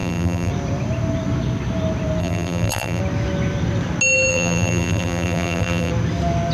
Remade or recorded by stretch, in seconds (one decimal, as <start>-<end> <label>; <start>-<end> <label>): 0.0-0.5 remade; 0.5-2.2 recorded; 2.2-3.0 remade; 3.0-4.3 recorded; 4.3-5.9 remade; 5.9-6.5 recorded